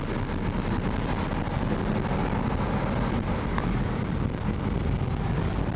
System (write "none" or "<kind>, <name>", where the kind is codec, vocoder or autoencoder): none